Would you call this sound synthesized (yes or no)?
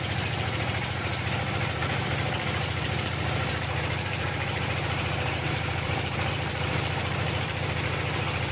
yes